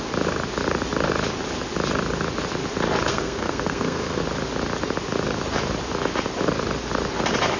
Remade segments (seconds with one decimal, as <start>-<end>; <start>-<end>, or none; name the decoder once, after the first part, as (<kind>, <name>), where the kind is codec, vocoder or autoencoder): 3.1-4.2 (codec, SNAC)